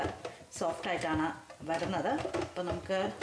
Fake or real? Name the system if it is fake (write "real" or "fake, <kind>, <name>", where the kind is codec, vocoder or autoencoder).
real